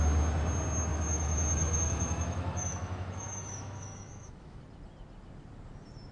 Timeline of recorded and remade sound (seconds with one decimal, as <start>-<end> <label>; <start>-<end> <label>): 0.0-0.9 recorded; 0.9-4.6 remade; 4.6-6.1 recorded